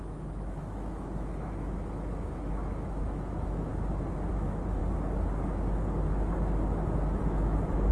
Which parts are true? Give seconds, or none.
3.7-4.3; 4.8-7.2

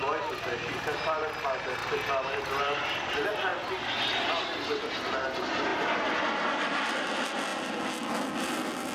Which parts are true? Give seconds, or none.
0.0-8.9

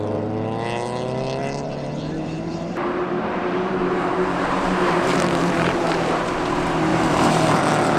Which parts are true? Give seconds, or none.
0.0-1.4; 6.2-6.9; 7.6-8.0